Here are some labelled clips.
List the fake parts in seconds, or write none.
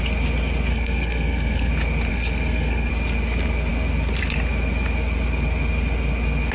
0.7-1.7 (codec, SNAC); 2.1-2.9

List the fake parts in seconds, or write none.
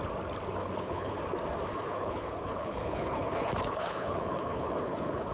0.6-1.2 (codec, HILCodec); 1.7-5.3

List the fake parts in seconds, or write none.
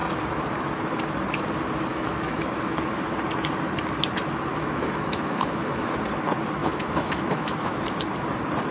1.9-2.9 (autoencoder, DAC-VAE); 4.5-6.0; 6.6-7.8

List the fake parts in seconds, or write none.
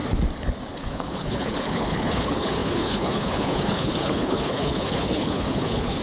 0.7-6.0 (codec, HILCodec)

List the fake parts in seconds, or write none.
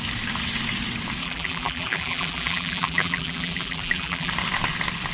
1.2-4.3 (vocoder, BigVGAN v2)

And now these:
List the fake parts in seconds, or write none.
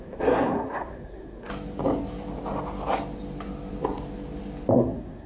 0.0-1.5 (codec, SNAC); 4.7-5.3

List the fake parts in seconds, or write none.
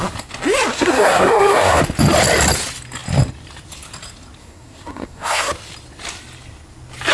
0.7-1.8 (codec, SNAC); 4.4-5.5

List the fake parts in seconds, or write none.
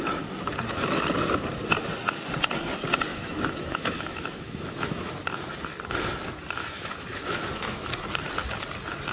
3.1-5.1 (autoencoder, DAC-VAE); 6.6-7.9